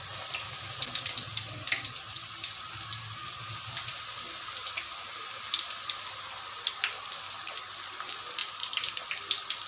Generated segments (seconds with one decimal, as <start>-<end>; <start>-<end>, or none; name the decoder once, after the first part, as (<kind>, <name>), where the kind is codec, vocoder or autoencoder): none